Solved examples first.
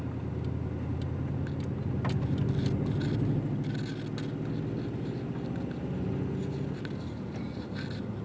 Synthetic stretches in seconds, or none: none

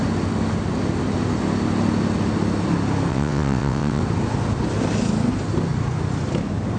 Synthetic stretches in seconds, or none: 3.1-4.0 (vocoder, WaveNeXt)

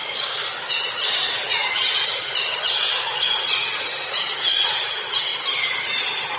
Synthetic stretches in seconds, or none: none

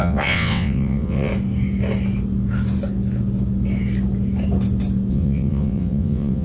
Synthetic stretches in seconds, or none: 0.0-1.3 (vocoder, WaveNeXt); 5.1-6.4

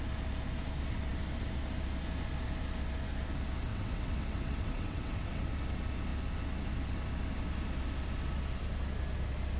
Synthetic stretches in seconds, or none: 3.7-5.4 (vocoder, WaveNeXt)

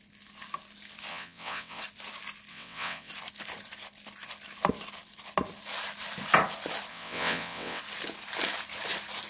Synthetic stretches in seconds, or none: 1.1-1.8 (vocoder, WaveNeXt); 2.5-3.1; 6.9-7.8

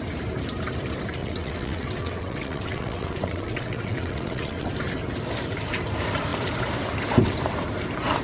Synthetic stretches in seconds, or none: 1.2-4.7 (vocoder, WaveNeXt)

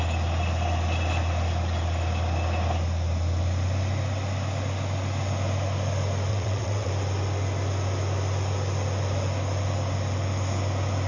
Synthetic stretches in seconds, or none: 6.3-6.9 (vocoder, WaveNeXt)